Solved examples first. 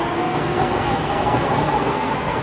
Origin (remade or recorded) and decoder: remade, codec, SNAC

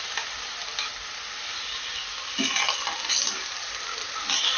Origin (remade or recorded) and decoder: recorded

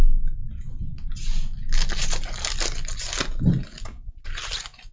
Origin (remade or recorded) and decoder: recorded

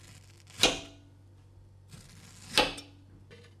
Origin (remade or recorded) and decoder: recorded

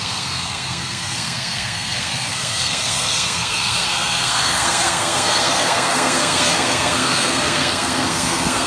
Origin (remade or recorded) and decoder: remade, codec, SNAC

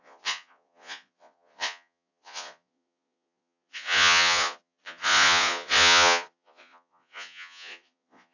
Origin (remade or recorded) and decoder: remade, vocoder, Vocos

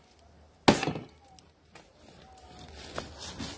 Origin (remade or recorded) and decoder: recorded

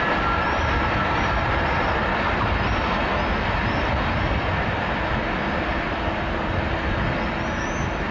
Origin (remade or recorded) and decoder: recorded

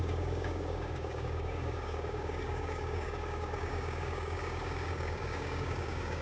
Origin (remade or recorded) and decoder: remade, codec, DAC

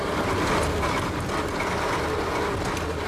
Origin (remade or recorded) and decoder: recorded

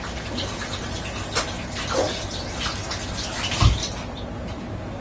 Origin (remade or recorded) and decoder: recorded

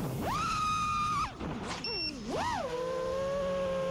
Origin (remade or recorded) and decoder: recorded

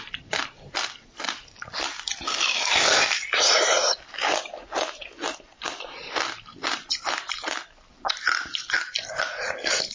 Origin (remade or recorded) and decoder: recorded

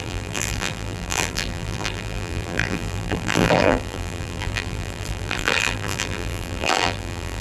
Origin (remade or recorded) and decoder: remade, vocoder, BigVGAN v2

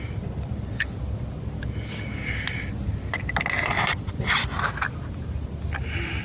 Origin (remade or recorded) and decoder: recorded